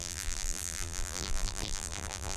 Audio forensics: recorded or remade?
remade